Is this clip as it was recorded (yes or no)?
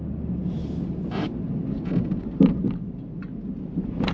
yes